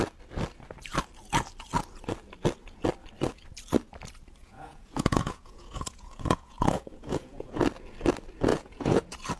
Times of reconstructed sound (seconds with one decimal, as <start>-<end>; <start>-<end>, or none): 4.4-7.6; 8.5-9.0